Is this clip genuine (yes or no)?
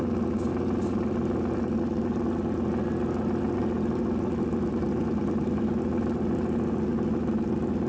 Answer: yes